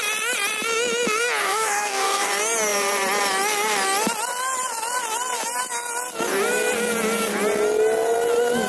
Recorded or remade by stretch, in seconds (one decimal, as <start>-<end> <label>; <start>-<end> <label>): 0.0-1.4 recorded; 1.4-2.3 remade; 2.3-8.7 recorded